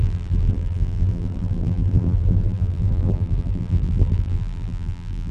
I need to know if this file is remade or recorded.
remade